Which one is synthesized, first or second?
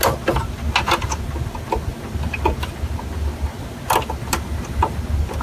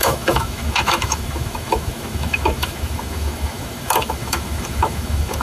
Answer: second